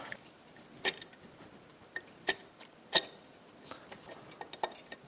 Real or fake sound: real